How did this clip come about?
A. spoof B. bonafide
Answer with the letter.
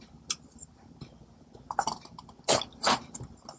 B